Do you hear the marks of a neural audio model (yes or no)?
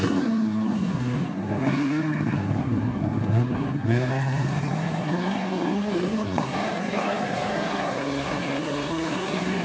yes